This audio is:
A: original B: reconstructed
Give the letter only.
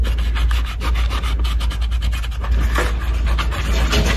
A